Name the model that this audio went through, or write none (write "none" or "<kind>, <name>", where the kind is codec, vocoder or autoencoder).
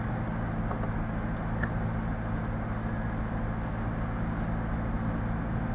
none